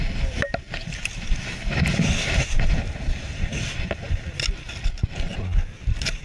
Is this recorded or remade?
recorded